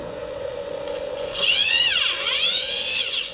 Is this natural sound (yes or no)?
no